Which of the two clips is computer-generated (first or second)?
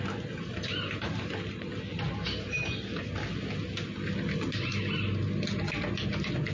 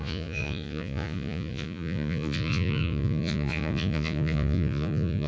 second